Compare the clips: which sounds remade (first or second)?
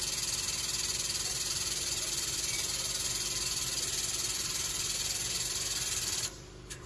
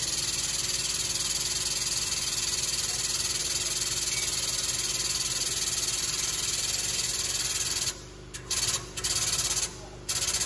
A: first